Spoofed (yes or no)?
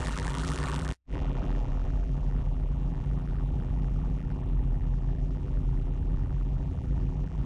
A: yes